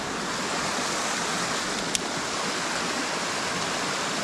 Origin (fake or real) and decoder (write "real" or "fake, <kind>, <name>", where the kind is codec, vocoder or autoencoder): real